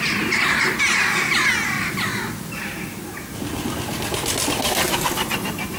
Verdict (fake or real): real